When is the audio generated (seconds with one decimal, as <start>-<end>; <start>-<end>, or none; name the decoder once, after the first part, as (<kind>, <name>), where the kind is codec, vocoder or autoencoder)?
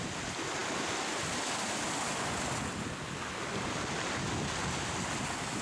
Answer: none